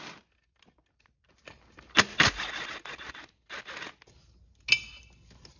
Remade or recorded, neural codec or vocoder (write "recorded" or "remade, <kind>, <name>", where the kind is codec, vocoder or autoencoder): recorded